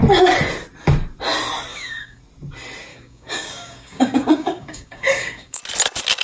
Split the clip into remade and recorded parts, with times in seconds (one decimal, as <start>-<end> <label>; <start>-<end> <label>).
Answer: 0.0-1.7 recorded; 1.7-2.2 remade; 2.2-2.9 recorded; 2.9-5.6 remade; 5.6-6.2 recorded